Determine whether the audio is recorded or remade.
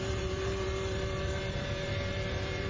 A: remade